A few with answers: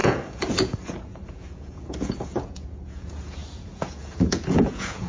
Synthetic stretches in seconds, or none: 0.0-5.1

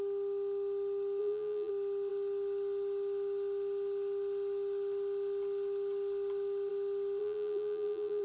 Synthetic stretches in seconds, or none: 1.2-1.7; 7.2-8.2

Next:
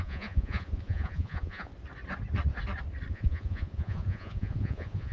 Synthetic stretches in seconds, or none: 0.0-1.7; 3.1-5.1

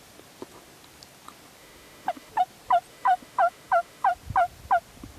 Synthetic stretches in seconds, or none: 1.6-2.3; 2.9-4.1